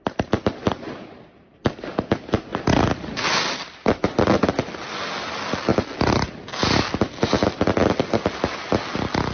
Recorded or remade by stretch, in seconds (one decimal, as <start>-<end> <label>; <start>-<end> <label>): 0.0-9.3 recorded